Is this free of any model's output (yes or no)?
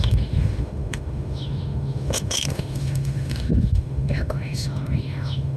no